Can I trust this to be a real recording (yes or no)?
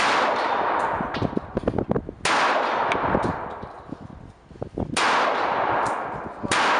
yes